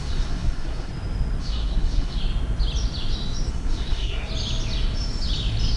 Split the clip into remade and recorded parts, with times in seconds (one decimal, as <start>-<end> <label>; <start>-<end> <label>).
0.0-0.9 remade; 0.9-1.4 recorded; 1.4-2.2 remade; 2.2-3.5 recorded; 3.5-4.3 remade; 4.3-5.8 recorded